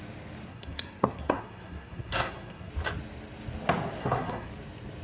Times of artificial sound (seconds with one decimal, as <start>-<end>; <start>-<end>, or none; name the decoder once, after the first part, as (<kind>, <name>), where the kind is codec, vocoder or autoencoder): 0.5-2.7 (codec, SNAC); 4.0-4.5